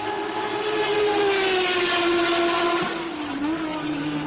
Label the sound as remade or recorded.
recorded